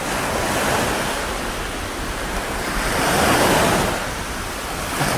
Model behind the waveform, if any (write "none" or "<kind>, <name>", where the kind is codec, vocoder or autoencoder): none